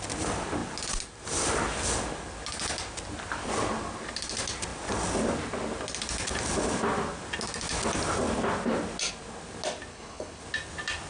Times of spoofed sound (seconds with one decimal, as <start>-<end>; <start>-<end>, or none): 9.9-10.4